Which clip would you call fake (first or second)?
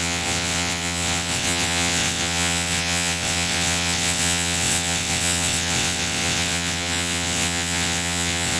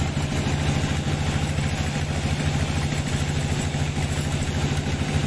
first